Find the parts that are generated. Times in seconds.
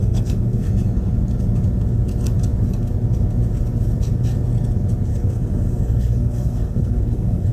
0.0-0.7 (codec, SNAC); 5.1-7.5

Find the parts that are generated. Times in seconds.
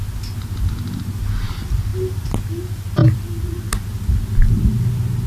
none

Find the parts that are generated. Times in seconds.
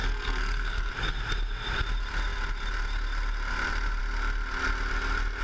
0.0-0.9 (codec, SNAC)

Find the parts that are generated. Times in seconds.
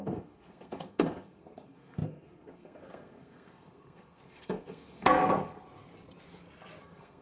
0.0-5.2 (codec, SNAC); 6.8-7.2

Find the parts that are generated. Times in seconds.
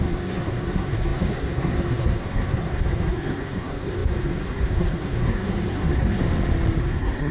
0.0-6.2 (codec, SNAC); 6.8-7.3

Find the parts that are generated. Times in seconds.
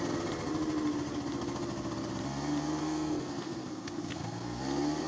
2.8-4.6 (codec, SNAC)